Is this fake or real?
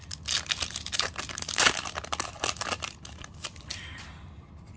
real